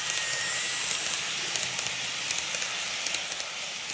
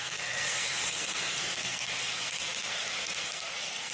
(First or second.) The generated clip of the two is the second